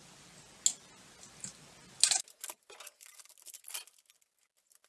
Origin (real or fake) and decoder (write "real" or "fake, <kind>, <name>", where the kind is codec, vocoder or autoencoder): real